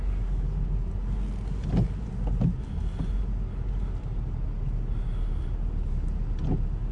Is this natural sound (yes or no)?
yes